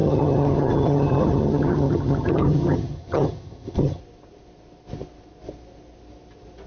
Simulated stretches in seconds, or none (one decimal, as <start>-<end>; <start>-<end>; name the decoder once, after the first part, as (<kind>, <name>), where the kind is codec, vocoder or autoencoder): 0.0-4.0 (vocoder, HiFi-GAN)